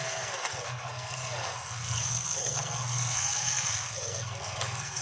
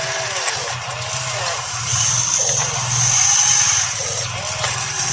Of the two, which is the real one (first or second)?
second